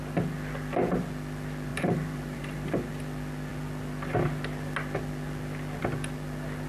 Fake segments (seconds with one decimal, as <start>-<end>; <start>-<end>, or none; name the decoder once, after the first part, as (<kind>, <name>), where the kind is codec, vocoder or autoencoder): 1.7-2.9 (vocoder, BigVGAN v2)